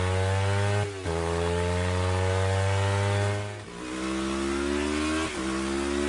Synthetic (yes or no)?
no